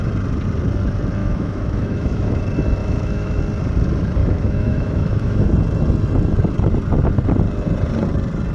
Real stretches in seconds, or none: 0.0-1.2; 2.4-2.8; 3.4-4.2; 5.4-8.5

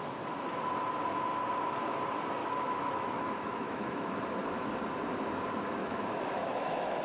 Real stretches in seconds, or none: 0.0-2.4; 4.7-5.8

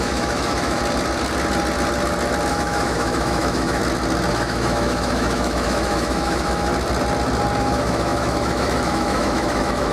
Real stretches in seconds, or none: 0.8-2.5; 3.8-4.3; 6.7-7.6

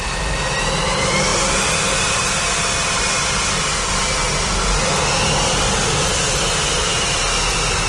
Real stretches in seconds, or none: 0.0-7.9

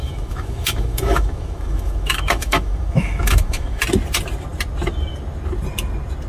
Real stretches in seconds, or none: 3.8-6.3

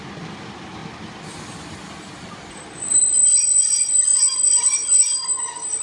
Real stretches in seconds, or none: 0.0-5.8

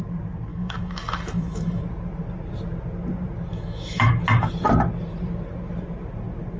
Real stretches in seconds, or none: 0.0-0.5; 1.8-3.5; 4.1-6.6

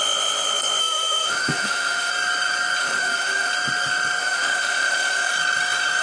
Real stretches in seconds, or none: 0.0-0.8; 2.1-2.8; 3.5-4.2; 5.3-6.0